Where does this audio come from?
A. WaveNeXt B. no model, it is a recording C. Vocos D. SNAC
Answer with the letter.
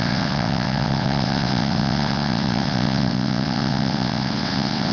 A